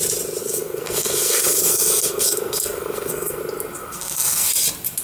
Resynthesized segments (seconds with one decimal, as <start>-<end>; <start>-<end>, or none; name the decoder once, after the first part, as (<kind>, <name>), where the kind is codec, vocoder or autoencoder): 0.4-3.4 (codec, SNAC); 3.8-4.5